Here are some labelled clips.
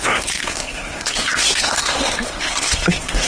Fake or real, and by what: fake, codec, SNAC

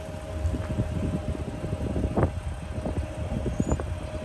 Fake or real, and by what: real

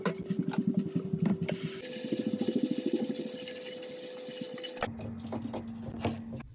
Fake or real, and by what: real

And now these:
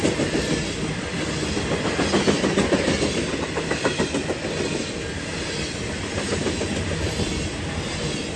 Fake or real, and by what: real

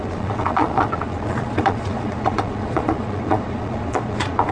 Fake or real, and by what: fake, vocoder, Vocos